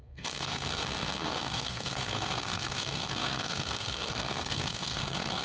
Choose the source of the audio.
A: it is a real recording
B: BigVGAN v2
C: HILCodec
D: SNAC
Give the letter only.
D